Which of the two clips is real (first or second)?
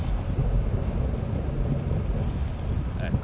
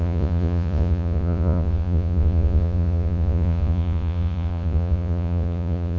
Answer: first